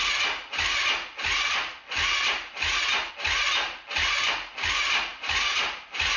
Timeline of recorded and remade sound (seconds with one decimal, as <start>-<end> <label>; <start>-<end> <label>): 0.0-6.2 recorded